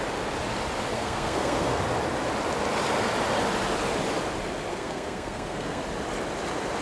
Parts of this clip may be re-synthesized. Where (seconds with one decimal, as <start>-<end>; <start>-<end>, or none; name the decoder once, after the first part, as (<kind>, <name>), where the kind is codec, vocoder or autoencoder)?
0.9-1.8 (codec, SNAC); 4.7-5.8